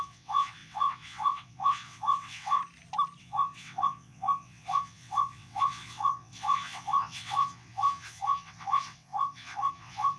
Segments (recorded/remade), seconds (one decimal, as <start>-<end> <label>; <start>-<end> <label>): 0.0-2.6 remade; 2.6-3.2 recorded; 3.2-10.2 remade